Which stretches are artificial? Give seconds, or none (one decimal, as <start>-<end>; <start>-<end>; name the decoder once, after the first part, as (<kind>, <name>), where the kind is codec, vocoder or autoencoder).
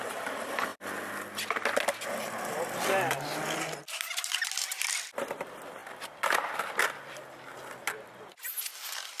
none